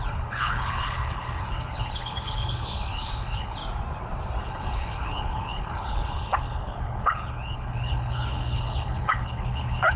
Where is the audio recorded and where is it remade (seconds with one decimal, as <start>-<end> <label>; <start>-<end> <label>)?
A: 0.0-3.6 remade; 3.6-4.4 recorded; 4.4-10.0 remade